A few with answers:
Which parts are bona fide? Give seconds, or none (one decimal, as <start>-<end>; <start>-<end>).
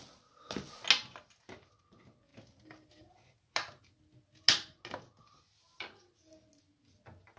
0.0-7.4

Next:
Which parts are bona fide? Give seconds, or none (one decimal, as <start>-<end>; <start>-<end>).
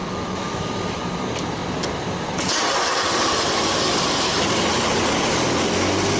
1.0-6.2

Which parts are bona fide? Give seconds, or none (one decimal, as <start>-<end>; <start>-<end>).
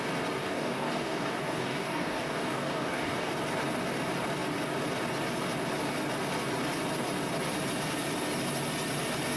0.0-0.4; 3.3-9.4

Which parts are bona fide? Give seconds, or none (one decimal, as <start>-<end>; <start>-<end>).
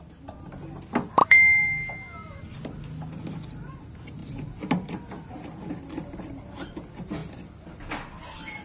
0.0-1.2; 2.4-8.6